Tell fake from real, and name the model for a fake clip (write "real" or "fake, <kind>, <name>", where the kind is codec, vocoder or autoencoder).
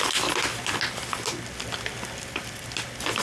real